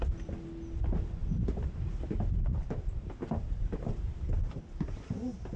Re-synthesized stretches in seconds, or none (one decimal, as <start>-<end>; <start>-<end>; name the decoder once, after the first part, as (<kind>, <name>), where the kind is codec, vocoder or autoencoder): 1.2-4.6 (vocoder, BigVGAN v2)